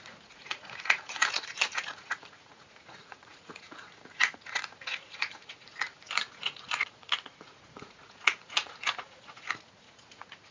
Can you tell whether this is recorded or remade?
remade